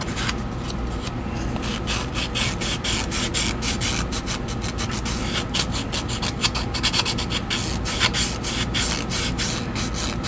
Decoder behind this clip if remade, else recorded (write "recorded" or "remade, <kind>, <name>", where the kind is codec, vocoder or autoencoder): recorded